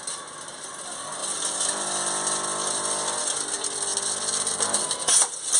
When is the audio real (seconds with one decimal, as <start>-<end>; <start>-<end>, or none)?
0.0-5.6